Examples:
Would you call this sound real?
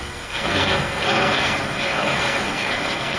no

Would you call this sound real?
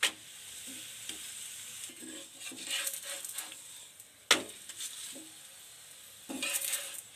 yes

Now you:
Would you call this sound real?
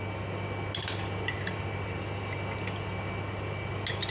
yes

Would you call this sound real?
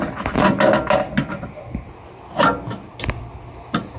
yes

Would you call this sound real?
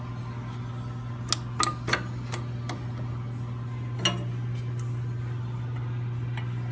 yes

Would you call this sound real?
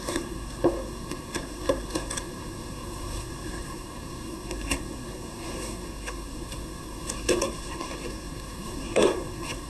no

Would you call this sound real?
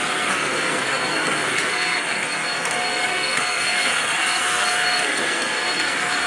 no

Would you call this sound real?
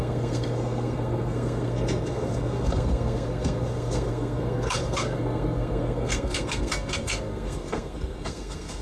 no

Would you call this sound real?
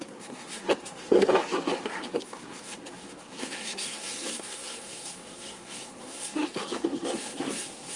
no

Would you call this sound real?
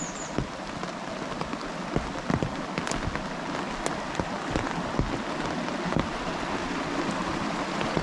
yes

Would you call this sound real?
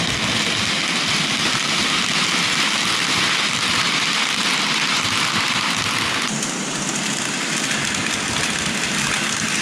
yes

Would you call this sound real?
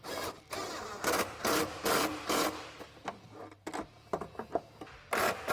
yes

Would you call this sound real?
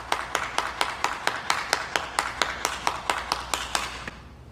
yes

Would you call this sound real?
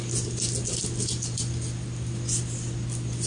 yes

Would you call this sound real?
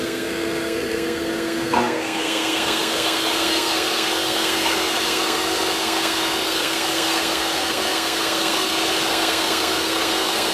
no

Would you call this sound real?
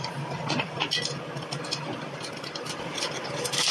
yes